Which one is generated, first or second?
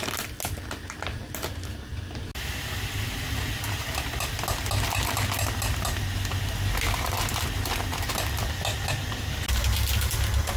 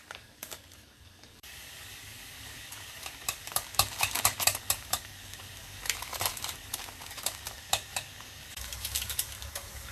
second